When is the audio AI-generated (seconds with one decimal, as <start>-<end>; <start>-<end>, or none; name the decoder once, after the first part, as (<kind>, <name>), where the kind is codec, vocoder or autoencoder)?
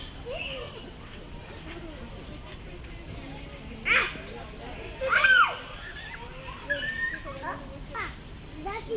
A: 0.6-1.3 (vocoder, WaveNeXt)